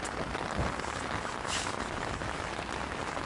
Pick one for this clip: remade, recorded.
recorded